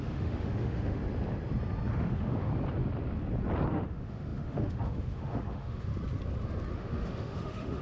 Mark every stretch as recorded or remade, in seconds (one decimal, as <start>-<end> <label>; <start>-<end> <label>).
0.0-1.0 remade; 1.0-1.9 recorded; 1.9-2.5 remade; 2.5-3.7 recorded; 3.7-5.9 remade; 5.9-6.7 recorded; 6.7-7.8 remade